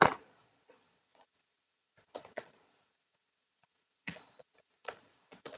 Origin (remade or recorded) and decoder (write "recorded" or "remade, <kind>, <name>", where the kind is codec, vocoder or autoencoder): remade, vocoder, Vocos